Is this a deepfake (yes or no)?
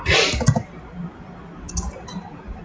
no